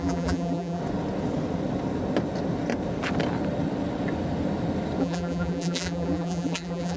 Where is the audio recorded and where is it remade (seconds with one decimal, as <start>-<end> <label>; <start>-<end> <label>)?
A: 0.0-0.8 remade; 0.8-5.0 recorded; 5.0-7.0 remade